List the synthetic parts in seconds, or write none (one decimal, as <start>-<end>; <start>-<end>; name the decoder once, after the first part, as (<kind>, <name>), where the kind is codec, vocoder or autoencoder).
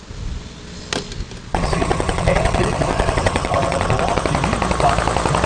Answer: 1.5-4.2 (vocoder, WaveNeXt)